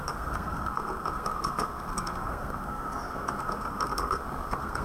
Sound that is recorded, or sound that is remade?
remade